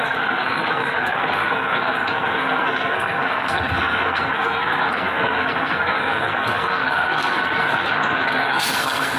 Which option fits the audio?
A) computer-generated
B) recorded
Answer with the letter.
A